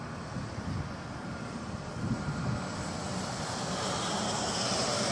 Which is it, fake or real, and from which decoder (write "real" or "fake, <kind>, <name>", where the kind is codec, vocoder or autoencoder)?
real